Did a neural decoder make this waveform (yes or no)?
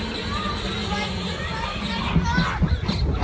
no